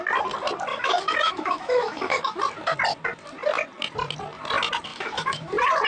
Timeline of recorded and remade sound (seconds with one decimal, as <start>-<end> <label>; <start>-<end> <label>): 0.0-0.7 recorded; 0.7-2.4 remade; 2.4-4.9 recorded; 4.9-5.5 remade; 5.5-5.9 recorded